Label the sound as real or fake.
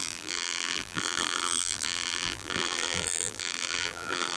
fake